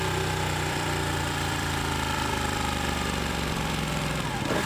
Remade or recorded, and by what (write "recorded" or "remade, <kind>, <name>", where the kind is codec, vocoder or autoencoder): remade, vocoder, BigVGAN v2